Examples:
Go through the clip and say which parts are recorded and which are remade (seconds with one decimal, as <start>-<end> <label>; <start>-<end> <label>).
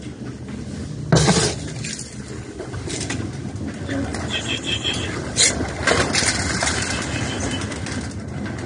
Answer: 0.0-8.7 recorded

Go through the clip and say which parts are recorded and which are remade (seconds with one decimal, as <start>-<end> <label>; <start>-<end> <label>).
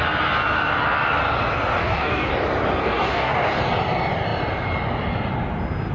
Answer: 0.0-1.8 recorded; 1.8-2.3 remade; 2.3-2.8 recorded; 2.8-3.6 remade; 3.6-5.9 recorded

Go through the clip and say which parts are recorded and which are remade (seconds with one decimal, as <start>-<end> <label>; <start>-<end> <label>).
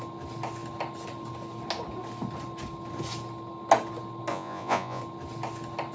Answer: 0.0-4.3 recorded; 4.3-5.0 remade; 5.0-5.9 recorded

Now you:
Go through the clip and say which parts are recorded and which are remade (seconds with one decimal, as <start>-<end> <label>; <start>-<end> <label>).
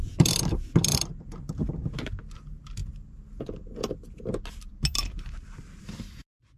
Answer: 0.0-6.6 recorded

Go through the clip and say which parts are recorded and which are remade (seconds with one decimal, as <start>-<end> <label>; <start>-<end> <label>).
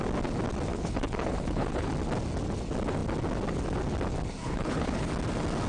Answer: 0.0-0.7 recorded; 0.7-1.9 remade; 1.9-4.4 recorded; 4.4-5.1 remade; 5.1-5.7 recorded